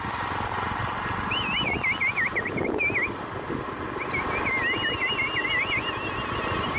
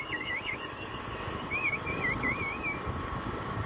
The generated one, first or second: second